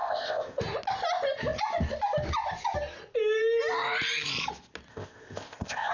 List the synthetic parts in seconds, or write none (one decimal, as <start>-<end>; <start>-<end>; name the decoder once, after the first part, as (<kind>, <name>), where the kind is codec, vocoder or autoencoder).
0.0-0.6 (codec, ZipCodec); 4.9-5.9